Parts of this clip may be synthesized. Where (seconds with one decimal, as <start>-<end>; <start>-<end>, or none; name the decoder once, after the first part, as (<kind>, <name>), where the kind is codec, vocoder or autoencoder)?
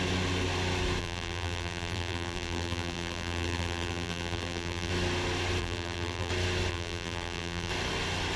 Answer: 1.0-4.9 (vocoder, BigVGAN v2); 5.6-6.3; 6.7-7.7